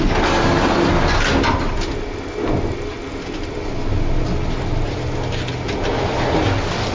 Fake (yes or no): no